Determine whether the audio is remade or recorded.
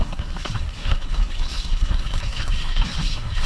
remade